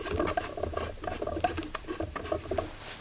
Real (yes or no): yes